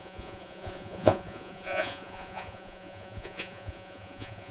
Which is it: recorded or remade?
remade